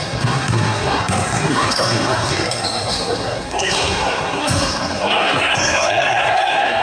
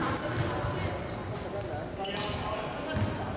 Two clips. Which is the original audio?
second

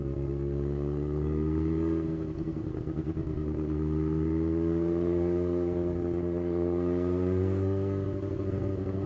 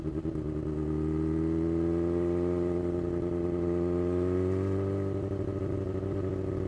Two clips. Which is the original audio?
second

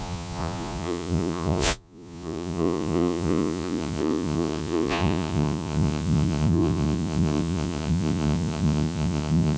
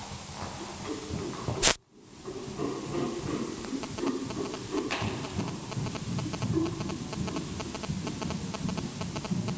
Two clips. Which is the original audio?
second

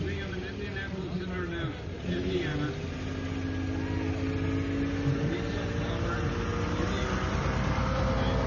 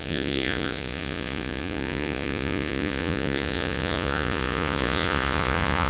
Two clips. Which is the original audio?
first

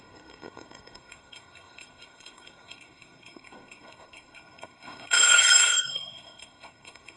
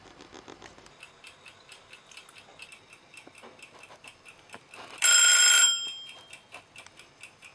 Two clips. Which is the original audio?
second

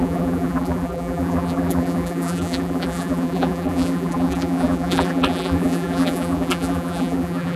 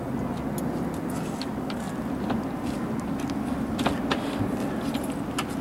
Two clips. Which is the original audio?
second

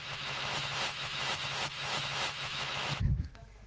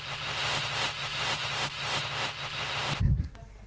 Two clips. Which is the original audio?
second